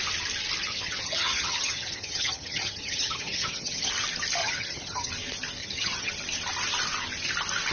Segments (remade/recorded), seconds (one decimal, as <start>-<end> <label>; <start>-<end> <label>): 0.0-0.7 recorded; 0.7-3.9 remade; 3.9-4.4 recorded; 4.4-5.1 remade; 5.1-5.6 recorded; 5.6-6.1 remade; 6.1-7.7 recorded